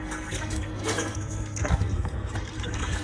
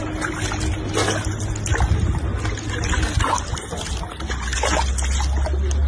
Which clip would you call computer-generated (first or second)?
first